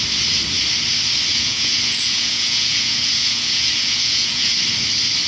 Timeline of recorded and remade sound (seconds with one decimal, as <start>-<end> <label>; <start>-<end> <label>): 0.0-1.3 recorded; 1.3-4.5 remade; 4.5-5.3 recorded